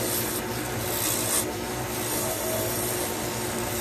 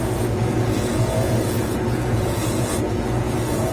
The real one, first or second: first